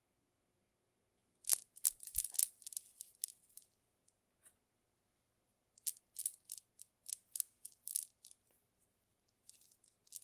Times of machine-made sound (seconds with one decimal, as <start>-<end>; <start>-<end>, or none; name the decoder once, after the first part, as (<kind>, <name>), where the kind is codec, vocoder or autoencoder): none